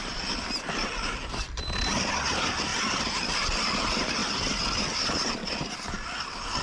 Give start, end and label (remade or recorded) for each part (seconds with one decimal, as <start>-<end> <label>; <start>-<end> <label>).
0.0-6.6 recorded